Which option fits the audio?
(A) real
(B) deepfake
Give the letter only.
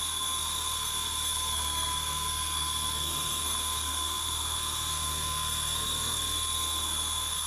B